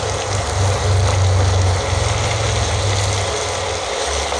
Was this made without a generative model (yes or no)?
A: yes